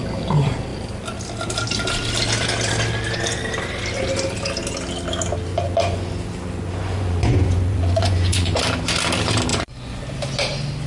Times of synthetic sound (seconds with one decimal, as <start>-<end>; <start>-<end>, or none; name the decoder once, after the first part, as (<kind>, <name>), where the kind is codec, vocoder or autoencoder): 5.5-8.6 (vocoder, Vocos); 9.5-10.0